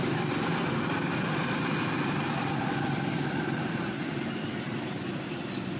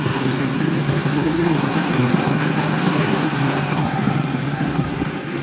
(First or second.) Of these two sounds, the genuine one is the first